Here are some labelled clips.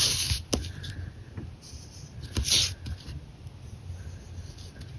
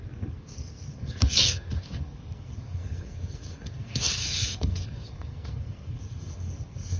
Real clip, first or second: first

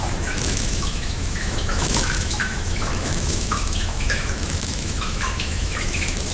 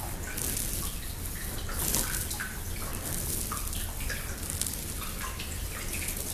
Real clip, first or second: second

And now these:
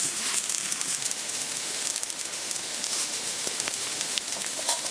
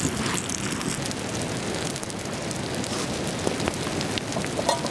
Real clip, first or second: second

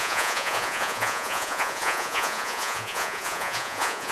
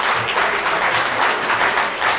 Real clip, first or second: second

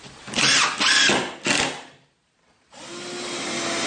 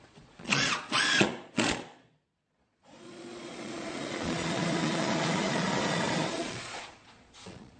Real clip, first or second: first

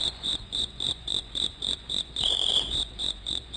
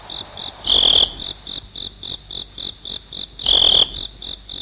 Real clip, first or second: second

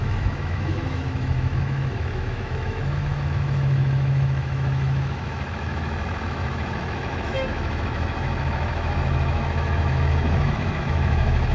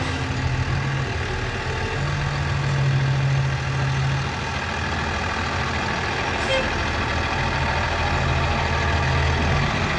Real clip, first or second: second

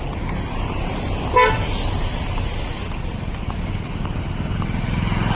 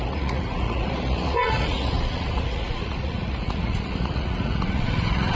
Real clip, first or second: first